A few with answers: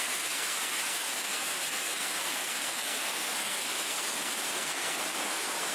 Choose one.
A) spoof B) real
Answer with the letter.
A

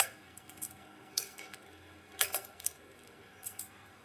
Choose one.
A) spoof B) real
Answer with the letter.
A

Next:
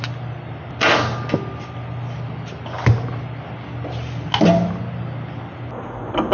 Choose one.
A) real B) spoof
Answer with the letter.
A